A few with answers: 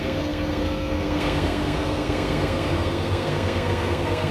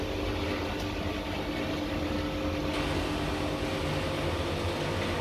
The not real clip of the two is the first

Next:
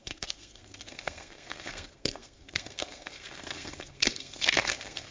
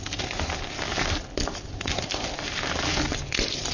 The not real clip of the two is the first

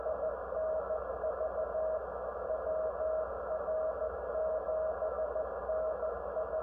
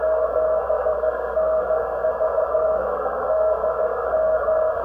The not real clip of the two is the second